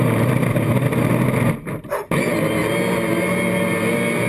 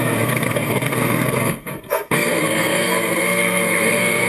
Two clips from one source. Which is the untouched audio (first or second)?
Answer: first